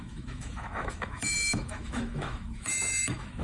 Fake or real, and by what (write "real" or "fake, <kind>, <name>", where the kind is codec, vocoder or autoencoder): fake, autoencoder, DAC-VAE